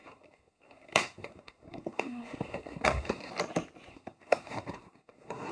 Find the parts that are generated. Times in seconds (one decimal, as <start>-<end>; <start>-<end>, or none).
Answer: 0.0-3.3; 3.9-5.5